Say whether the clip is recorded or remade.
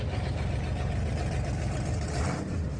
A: recorded